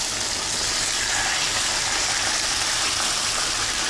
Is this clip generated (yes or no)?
no